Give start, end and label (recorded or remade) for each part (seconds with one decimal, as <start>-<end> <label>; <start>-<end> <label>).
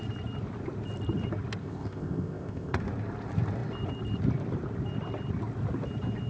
0.0-1.6 recorded; 1.6-2.8 remade; 2.8-6.3 recorded